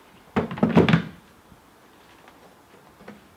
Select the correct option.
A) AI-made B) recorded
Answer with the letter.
B